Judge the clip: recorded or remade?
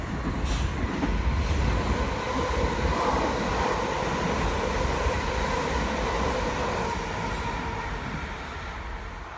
recorded